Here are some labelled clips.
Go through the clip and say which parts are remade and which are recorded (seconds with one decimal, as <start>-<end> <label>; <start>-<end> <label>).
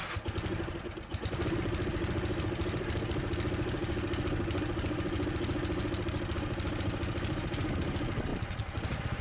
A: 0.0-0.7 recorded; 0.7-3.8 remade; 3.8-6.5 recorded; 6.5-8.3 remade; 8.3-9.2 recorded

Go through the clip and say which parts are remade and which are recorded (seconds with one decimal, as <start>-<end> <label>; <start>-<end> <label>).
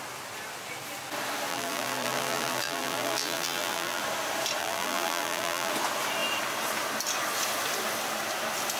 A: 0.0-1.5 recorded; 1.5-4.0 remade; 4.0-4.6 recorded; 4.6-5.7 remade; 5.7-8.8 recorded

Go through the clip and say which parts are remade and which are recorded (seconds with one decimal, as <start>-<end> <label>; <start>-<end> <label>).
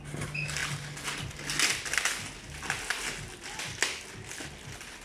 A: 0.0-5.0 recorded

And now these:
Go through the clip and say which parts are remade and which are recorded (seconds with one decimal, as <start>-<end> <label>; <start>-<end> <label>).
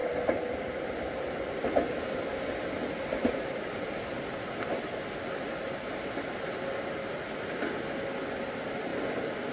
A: 0.0-9.5 recorded